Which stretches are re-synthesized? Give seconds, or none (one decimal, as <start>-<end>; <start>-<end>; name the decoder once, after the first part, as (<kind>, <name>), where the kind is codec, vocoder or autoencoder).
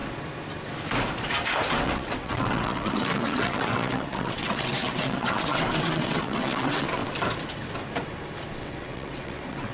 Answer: 1.7-7.0 (vocoder, WaveNeXt); 8.5-9.7